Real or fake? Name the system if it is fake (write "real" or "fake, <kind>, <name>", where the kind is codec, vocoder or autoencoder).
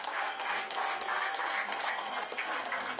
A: fake, codec, SNAC